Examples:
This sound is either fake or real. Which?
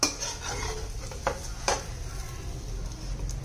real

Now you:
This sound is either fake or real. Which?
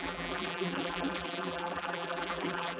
fake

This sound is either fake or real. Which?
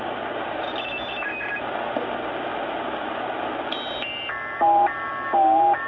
real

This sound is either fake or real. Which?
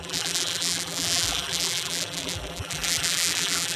fake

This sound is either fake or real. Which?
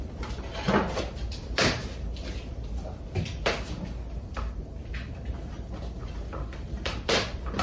fake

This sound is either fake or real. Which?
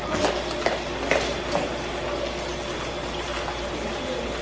real